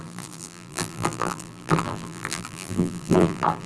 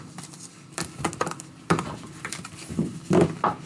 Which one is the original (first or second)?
second